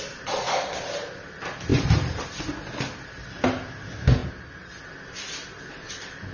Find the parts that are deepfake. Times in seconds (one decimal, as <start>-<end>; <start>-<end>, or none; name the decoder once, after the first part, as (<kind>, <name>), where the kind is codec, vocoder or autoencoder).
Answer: none